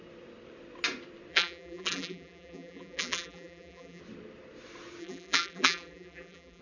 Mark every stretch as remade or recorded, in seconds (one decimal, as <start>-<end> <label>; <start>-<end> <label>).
0.0-1.3 recorded; 1.3-4.0 remade; 4.0-5.0 recorded; 5.0-6.6 remade